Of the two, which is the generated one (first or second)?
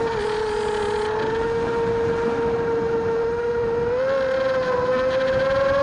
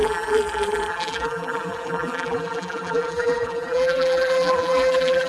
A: second